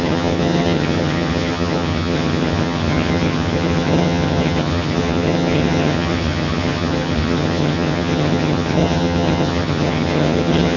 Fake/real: fake